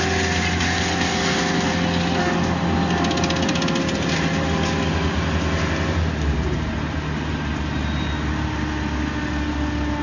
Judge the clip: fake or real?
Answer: real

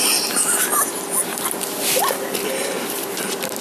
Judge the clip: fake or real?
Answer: real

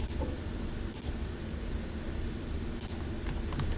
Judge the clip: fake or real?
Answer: real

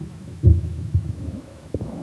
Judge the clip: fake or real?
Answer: fake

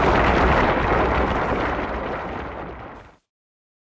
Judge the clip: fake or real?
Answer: real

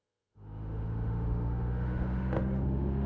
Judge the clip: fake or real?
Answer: fake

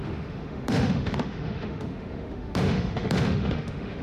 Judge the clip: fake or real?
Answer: fake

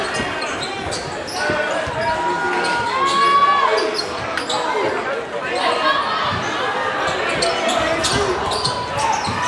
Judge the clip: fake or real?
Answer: real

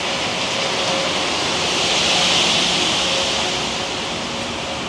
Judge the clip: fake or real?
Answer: real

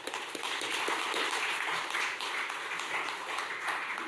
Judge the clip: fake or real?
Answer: real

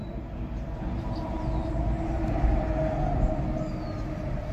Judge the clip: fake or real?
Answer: real